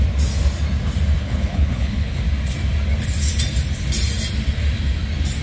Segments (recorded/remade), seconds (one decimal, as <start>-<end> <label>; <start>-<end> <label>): 0.0-1.2 recorded; 1.2-2.2 remade; 2.2-5.4 recorded